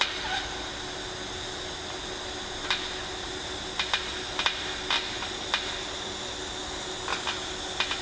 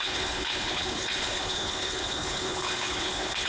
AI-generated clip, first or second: second